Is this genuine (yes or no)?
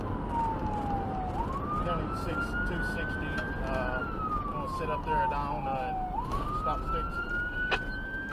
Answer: yes